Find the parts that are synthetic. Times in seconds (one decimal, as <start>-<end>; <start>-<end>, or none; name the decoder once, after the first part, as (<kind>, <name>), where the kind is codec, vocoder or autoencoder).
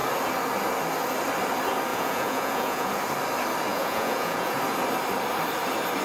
1.9-2.9 (vocoder, Vocos); 3.7-4.6